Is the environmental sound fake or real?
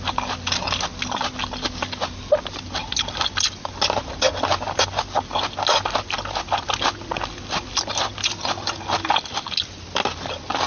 real